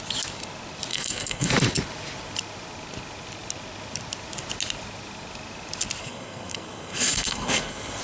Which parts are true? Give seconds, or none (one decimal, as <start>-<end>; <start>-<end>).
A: 0.0-0.9; 1.5-6.0